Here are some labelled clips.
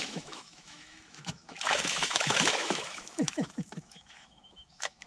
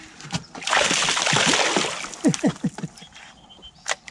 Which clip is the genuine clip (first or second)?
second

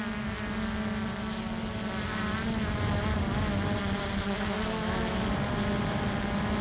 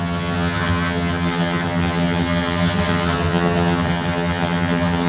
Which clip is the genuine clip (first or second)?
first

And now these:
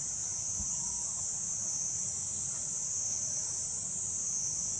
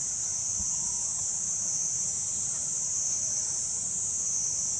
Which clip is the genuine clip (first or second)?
first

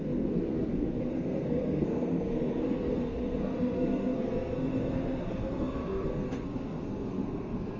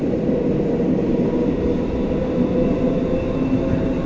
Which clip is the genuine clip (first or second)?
second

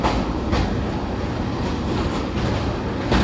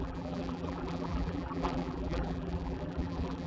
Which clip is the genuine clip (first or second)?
first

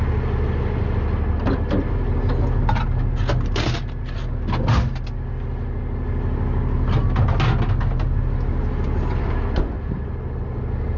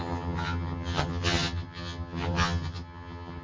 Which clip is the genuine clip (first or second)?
first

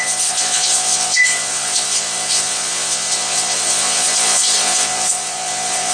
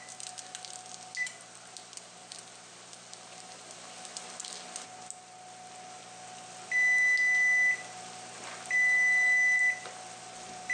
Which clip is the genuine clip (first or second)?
second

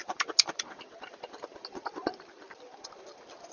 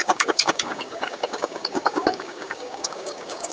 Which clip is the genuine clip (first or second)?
first